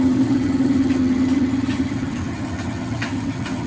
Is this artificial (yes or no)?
yes